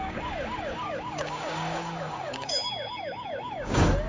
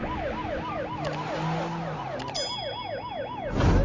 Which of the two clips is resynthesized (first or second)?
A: first